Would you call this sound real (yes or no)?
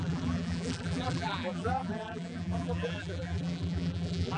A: no